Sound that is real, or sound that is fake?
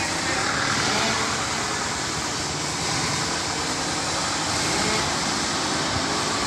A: real